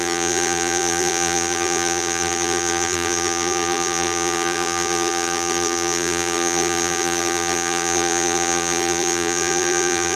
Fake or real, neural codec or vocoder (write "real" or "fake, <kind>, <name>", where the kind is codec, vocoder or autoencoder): fake, vocoder, BigVGAN v2